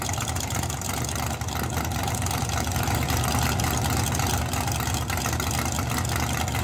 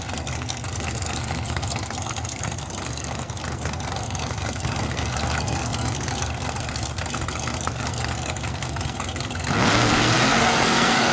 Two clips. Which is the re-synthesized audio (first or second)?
second